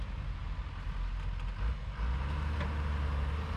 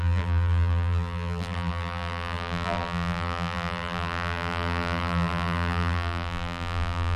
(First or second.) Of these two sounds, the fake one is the second